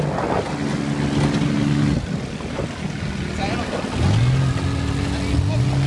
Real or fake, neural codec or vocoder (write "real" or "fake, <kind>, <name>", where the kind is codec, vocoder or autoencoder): real